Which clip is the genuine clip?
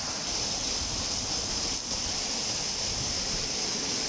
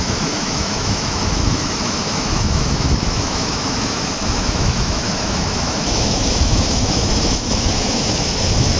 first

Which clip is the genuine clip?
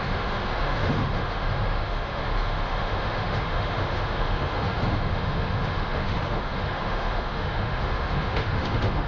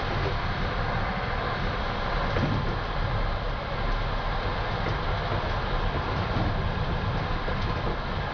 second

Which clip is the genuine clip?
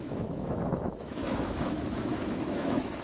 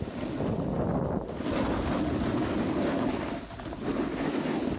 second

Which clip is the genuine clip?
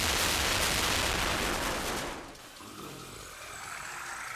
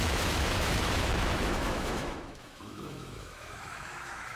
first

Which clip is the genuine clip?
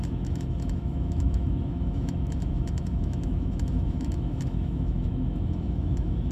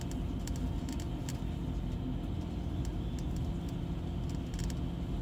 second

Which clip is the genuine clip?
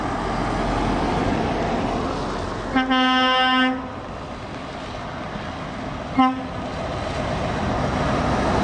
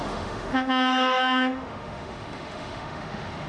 first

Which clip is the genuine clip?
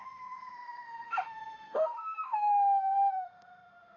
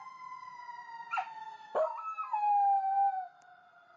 second